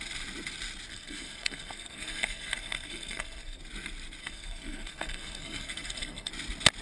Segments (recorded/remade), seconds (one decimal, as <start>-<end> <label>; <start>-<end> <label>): 0.0-0.9 recorded; 0.9-3.6 remade; 3.6-4.2 recorded; 4.2-6.3 remade; 6.3-6.8 recorded

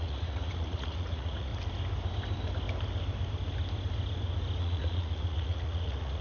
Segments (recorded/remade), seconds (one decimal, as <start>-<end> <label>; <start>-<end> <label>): 0.0-1.5 remade; 1.5-4.6 recorded; 4.6-6.2 remade

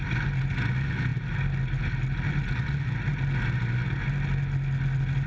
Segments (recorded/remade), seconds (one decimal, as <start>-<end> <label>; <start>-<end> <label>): 0.0-5.3 recorded

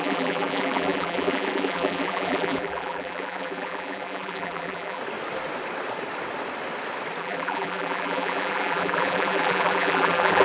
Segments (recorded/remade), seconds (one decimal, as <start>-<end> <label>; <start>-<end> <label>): 0.0-5.0 remade; 5.0-7.2 recorded; 7.2-10.4 remade

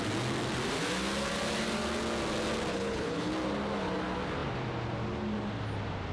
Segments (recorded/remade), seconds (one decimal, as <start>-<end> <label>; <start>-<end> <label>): 0.0-2.7 recorded; 2.7-3.3 remade; 3.3-6.1 recorded

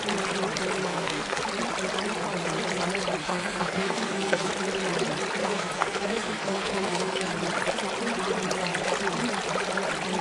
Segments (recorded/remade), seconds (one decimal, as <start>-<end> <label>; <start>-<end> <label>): 0.0-0.9 recorded; 0.9-1.4 remade; 1.4-3.2 recorded; 3.2-4.5 remade; 4.5-5.4 recorded; 5.4-7.3 remade; 7.3-10.2 recorded

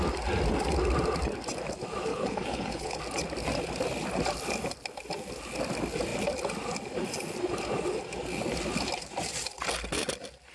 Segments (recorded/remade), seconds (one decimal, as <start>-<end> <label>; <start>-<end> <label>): 0.0-2.1 recorded; 2.1-3.0 remade; 3.0-10.5 recorded